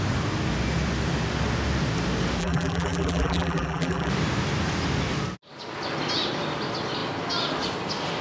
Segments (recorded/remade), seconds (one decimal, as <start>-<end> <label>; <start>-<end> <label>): 0.0-2.4 recorded; 2.4-4.1 remade; 4.1-8.2 recorded